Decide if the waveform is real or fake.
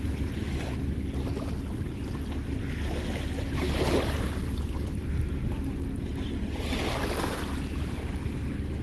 real